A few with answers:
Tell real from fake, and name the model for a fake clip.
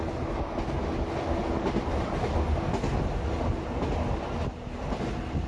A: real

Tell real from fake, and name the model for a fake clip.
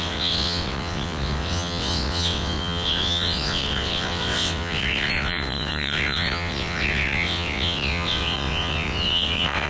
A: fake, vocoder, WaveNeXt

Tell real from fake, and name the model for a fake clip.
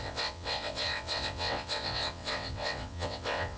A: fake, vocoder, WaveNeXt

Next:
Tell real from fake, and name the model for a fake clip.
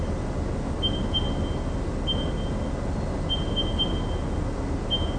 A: real